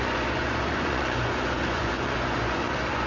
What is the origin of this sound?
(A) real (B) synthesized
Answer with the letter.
B